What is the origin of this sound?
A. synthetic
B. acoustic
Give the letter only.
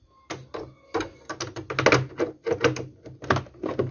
B